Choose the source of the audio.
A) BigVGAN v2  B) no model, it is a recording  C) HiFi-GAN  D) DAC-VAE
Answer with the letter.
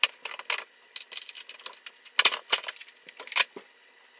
B